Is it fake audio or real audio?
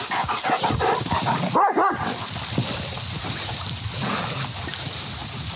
real